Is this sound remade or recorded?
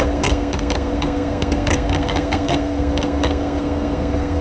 remade